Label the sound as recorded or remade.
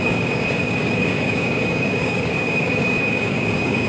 remade